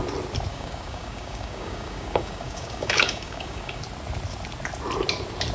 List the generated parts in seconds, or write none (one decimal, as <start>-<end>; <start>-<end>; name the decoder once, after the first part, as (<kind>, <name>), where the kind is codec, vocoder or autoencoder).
0.5-3.8 (codec, DAC)